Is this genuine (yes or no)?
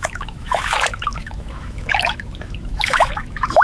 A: no